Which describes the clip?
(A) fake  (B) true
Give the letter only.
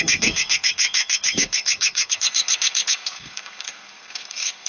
A